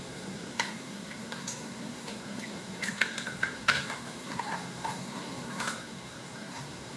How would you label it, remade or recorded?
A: remade